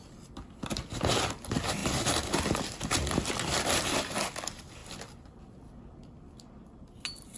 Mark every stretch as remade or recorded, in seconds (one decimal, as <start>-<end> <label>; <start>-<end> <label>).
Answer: 0.0-1.8 recorded; 1.8-2.4 remade; 2.4-4.8 recorded; 4.8-5.4 remade; 5.4-7.4 recorded